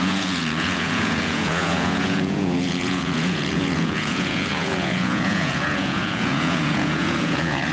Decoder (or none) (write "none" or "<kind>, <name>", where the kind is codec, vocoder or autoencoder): vocoder, Vocos